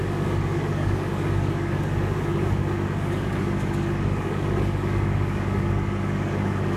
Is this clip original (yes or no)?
no